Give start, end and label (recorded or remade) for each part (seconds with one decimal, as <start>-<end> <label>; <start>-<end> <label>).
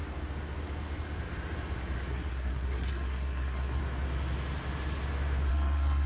0.0-2.1 recorded; 2.1-3.8 remade; 3.8-5.5 recorded; 5.5-6.1 remade